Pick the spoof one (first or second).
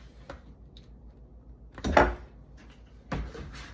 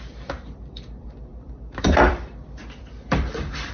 second